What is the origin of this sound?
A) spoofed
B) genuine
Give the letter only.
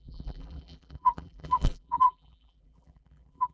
A